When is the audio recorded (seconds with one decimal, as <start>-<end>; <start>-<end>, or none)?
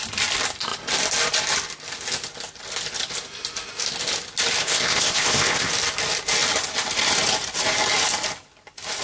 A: 0.0-4.6; 5.7-9.0